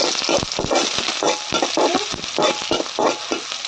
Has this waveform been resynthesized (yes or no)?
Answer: no